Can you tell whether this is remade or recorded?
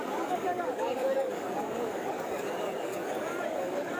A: remade